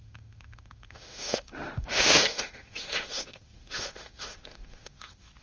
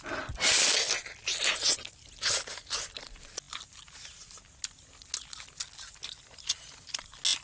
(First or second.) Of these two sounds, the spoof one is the first